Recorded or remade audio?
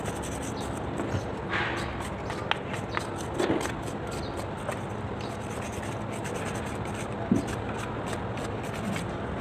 recorded